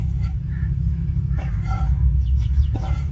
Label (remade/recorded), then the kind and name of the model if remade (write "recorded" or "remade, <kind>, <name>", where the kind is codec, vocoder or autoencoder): remade, autoencoder, DAC-VAE